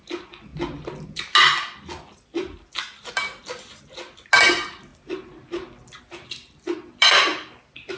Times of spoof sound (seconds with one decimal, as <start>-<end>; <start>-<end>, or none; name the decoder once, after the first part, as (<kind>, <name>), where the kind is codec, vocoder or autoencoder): none